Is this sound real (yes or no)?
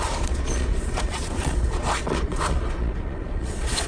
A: no